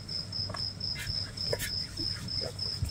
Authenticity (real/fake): real